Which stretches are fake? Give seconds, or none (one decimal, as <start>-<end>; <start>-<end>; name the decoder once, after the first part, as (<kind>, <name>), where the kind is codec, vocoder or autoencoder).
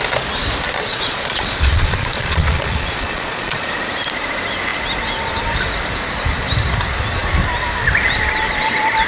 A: 0.9-3.7 (vocoder, Vocos)